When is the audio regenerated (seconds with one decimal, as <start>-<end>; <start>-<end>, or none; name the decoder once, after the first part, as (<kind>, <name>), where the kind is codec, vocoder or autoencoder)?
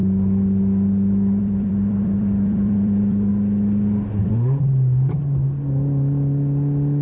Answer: 1.4-3.3 (vocoder, BigVGAN v2)